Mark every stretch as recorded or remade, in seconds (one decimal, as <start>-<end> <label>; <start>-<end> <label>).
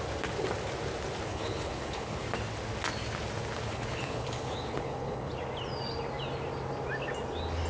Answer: 0.0-1.3 recorded; 1.3-2.2 remade; 2.2-3.7 recorded; 3.7-5.3 remade; 5.3-7.7 recorded